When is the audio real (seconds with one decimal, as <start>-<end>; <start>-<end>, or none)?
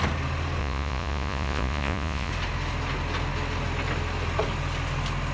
0.0-0.6; 2.3-5.3